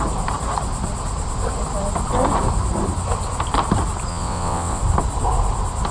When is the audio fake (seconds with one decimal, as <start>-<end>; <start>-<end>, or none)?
4.1-4.8